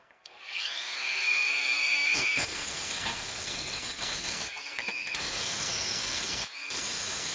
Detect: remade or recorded remade